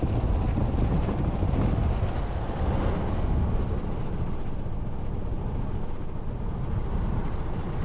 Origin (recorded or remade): recorded